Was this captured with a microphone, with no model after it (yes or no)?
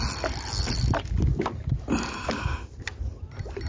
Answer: yes